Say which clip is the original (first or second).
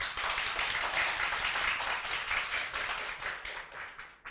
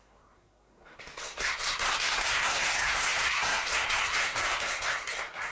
first